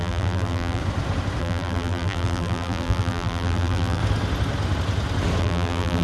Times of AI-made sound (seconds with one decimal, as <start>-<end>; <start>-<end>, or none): 0.0-0.8; 1.4-4.0; 5.4-6.0